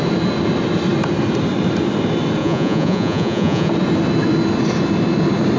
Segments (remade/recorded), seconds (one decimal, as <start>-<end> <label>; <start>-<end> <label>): 0.0-2.4 recorded; 2.4-3.7 remade; 3.7-5.6 recorded